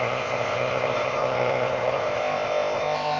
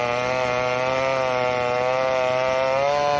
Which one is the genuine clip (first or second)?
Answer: second